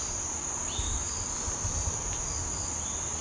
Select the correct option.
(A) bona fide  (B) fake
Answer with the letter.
A